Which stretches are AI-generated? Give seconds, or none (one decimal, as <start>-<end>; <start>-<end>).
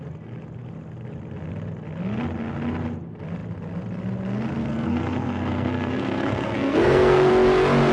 4.6-7.3